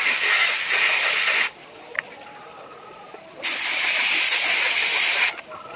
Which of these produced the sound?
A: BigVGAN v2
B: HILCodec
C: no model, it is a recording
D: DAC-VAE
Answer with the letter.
C